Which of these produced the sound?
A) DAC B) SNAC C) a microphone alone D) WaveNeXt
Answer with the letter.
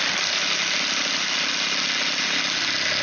C